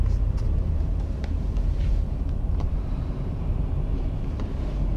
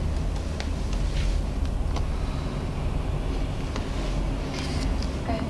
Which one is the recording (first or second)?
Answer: second